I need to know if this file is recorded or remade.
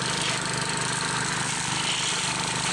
recorded